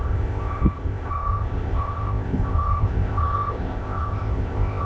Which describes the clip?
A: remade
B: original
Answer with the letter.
A